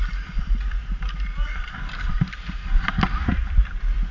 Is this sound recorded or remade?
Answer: recorded